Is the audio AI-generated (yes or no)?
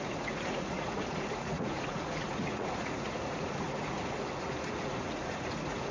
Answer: yes